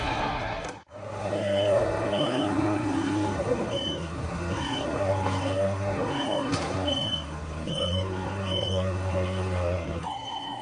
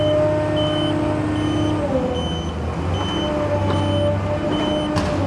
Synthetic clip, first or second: first